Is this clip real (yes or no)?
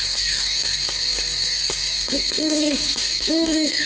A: no